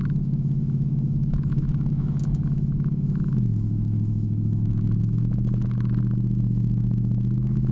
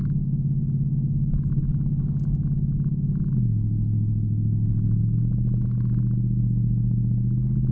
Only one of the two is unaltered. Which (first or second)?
second